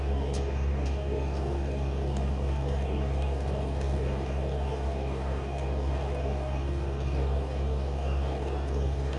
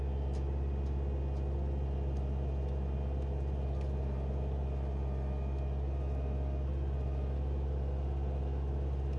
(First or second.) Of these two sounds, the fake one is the first